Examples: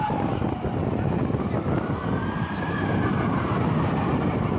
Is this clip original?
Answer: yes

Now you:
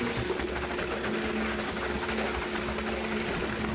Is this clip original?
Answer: yes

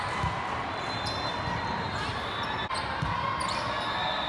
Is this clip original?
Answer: yes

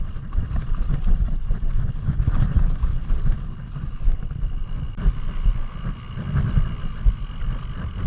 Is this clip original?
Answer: yes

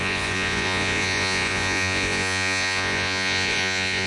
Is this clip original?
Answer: no